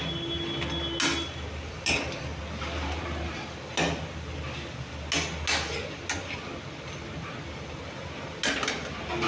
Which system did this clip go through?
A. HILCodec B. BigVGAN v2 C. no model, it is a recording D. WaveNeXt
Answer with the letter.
C